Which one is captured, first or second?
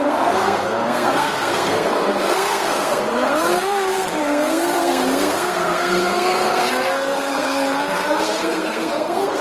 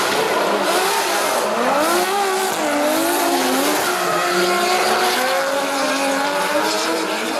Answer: second